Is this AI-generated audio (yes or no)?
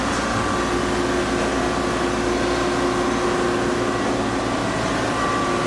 no